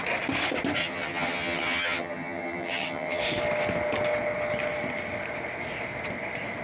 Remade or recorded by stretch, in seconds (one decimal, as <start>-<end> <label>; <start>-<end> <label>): 0.0-0.8 recorded; 0.8-3.2 remade; 3.2-6.6 recorded